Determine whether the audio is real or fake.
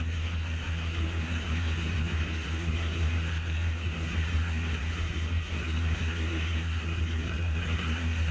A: fake